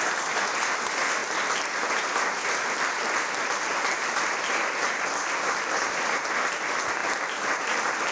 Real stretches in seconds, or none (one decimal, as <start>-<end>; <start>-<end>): 0.0-8.1